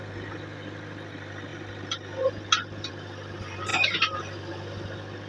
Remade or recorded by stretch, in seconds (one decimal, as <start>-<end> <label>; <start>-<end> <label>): 0.0-5.3 recorded